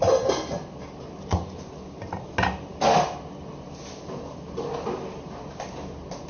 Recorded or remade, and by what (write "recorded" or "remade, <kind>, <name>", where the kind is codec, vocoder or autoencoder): recorded